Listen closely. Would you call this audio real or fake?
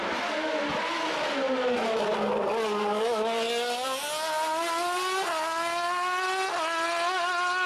real